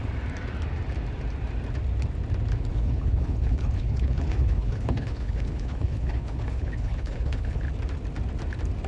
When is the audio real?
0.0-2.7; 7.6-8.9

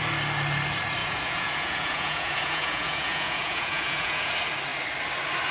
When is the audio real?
0.0-1.0; 4.3-5.5

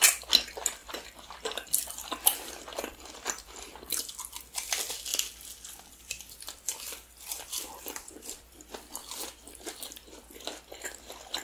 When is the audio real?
0.0-0.8; 1.7-2.7; 4.1-5.1; 8.7-11.4

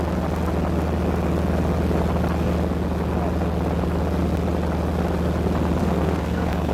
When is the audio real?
0.0-5.8